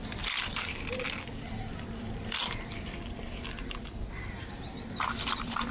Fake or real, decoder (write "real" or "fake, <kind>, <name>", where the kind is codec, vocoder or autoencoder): fake, vocoder, BigVGAN v2